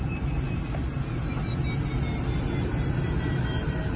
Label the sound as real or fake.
real